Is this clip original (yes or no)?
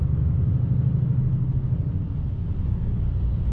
yes